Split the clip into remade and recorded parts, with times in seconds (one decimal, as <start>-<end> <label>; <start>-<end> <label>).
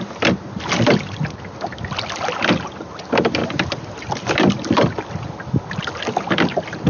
0.0-6.9 recorded